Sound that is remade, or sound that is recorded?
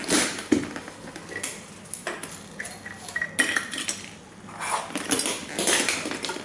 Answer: recorded